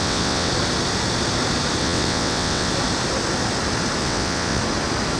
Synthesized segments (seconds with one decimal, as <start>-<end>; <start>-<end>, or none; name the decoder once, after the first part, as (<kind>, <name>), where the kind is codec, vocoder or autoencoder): 0.0-0.5 (vocoder, WaveNeXt); 1.8-2.7; 4.0-4.6